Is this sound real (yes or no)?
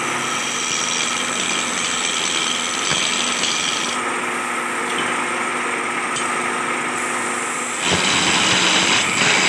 yes